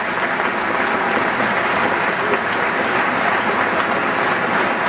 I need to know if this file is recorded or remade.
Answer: recorded